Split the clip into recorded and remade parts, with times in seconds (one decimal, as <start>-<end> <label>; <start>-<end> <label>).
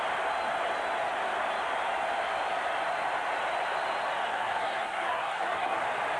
0.0-4.3 recorded; 4.3-5.8 remade; 5.8-6.2 recorded